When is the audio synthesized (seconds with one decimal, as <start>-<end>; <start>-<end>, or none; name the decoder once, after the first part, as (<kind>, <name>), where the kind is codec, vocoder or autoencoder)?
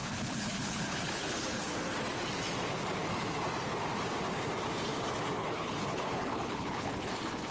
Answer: 0.0-1.7 (codec, HILCodec); 5.4-7.1